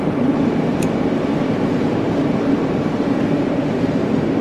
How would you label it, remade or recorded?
remade